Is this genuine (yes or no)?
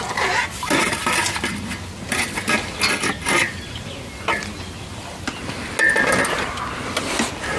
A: yes